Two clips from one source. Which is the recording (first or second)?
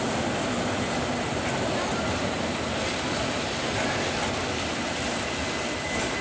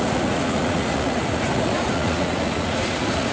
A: first